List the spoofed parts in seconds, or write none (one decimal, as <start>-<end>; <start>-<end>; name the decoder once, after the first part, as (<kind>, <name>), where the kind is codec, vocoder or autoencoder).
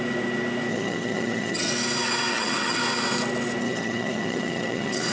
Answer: 0.7-1.7 (vocoder, HiFi-GAN); 2.3-2.8; 3.6-5.1